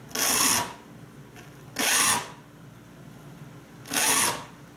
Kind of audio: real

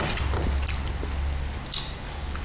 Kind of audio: real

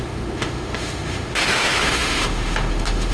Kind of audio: fake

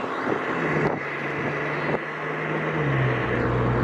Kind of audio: real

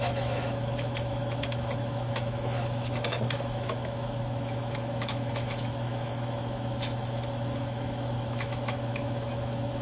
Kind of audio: fake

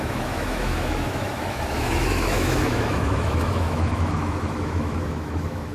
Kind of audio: fake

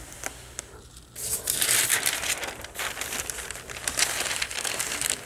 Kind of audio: real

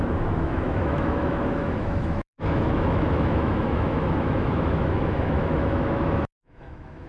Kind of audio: fake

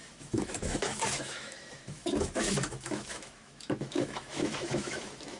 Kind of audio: fake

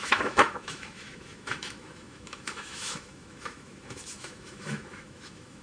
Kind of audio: fake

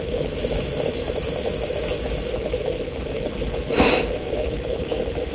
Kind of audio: fake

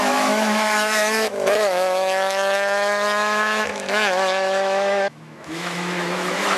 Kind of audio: fake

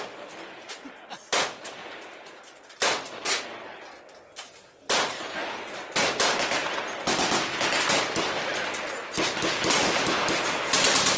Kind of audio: real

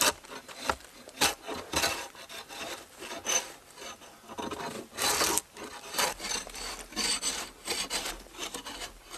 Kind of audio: real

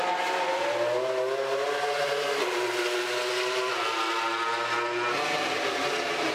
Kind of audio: real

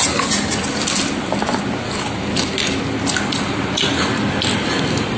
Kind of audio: real